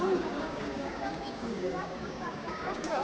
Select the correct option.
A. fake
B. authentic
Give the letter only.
A